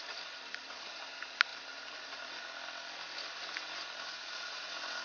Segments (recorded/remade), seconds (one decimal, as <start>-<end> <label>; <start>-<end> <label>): 0.0-5.0 recorded

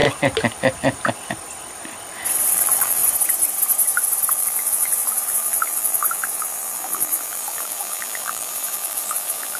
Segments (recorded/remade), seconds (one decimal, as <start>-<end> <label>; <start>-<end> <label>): 0.0-2.5 recorded; 2.5-3.0 remade; 3.0-4.3 recorded; 4.3-9.6 remade

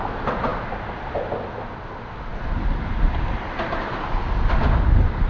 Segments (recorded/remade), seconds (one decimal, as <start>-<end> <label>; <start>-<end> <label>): 0.0-5.3 recorded

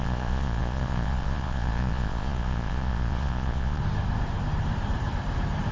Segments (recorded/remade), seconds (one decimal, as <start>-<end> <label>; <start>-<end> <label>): 0.0-3.8 remade; 3.8-5.7 recorded

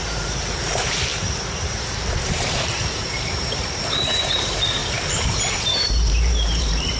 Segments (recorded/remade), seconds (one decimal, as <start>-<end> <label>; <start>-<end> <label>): 0.0-4.8 remade; 4.8-5.5 recorded; 5.5-7.0 remade